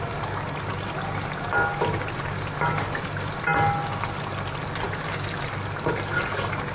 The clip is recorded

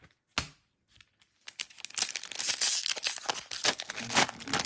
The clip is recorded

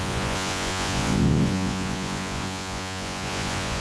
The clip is remade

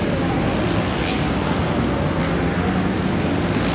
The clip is recorded